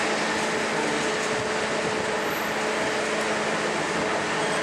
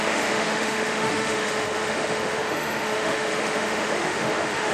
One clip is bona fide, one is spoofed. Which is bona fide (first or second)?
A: first